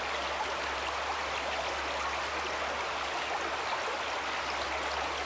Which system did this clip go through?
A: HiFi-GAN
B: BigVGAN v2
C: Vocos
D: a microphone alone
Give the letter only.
D